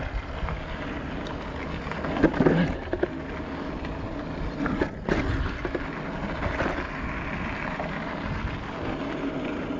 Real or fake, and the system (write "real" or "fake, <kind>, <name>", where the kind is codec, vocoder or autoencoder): real